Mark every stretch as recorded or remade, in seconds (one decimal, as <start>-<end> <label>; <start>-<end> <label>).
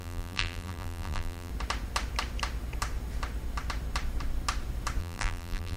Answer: 0.0-1.5 remade; 1.5-5.0 recorded; 5.0-5.8 remade